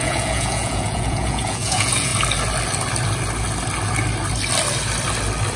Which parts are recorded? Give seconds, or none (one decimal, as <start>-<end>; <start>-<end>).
2.1-5.6